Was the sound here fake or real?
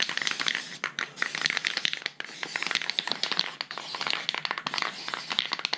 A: real